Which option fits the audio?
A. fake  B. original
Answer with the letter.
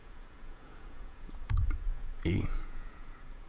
A